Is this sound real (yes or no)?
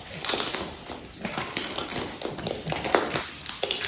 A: yes